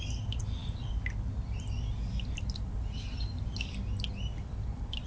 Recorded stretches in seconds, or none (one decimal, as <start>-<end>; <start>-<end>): 0.0-5.1